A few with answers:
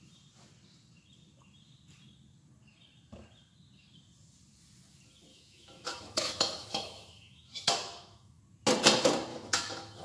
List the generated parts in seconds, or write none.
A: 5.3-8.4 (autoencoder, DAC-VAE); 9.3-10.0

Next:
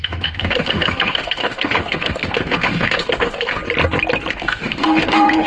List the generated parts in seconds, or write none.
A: 0.0-3.6 (autoencoder, DAC-VAE); 4.3-5.5